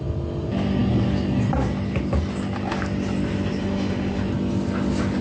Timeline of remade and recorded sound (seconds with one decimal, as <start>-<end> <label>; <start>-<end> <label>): 0.0-3.6 recorded; 3.6-4.2 remade; 4.2-5.2 recorded